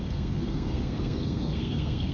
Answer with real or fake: fake